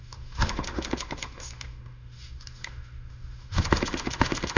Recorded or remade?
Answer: remade